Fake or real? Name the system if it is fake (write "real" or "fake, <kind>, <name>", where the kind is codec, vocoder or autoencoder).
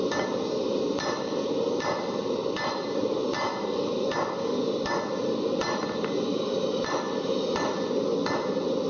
real